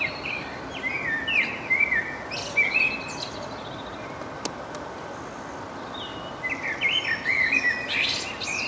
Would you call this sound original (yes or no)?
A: yes